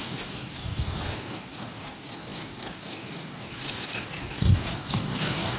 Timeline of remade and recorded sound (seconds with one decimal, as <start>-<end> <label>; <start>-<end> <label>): 0.0-5.6 remade